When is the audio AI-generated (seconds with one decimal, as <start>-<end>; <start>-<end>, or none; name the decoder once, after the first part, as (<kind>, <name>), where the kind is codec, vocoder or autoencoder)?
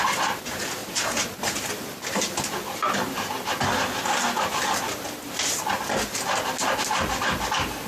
none